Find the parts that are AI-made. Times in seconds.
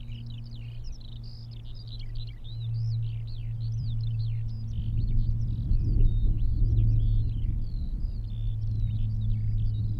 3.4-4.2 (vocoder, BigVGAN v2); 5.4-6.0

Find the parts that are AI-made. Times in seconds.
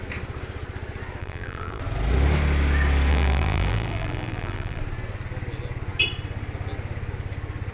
1.2-1.8 (vocoder, BigVGAN v2); 3.1-4.8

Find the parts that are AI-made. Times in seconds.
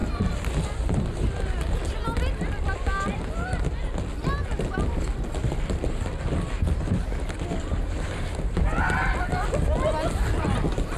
7.8-8.8 (vocoder, BigVGAN v2)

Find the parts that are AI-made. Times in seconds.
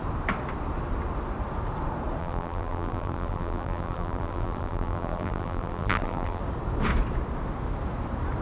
2.2-6.4 (vocoder, BigVGAN v2)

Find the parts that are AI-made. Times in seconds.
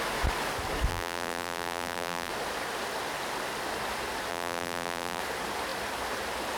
0.9-2.3 (vocoder, BigVGAN v2); 4.3-5.2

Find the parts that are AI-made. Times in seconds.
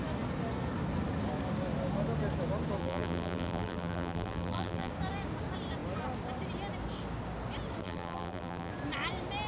2.8-4.9 (vocoder, BigVGAN v2); 7.8-8.7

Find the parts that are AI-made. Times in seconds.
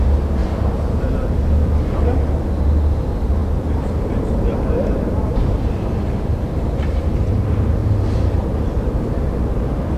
0.4-2.5 (vocoder, BigVGAN v2); 3.4-5.6; 6.3-7.3; 7.8-10.0